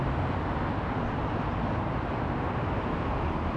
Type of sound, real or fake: real